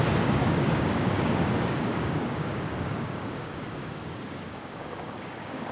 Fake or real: fake